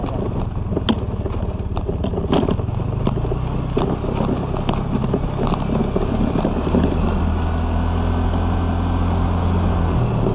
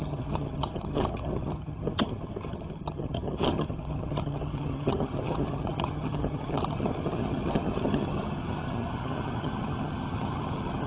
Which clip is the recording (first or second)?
first